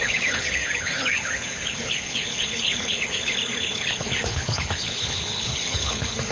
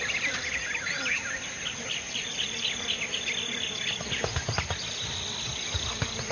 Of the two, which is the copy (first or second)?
first